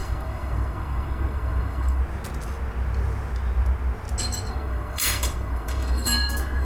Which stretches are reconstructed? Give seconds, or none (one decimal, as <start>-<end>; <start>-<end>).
0.0-2.0; 4.5-6.6